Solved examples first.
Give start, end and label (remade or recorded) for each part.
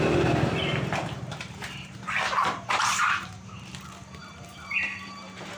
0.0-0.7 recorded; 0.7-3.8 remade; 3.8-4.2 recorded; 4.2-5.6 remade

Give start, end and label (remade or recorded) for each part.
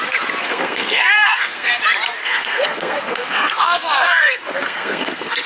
0.0-0.4 recorded; 0.4-1.7 remade; 1.7-2.2 recorded; 2.2-5.5 remade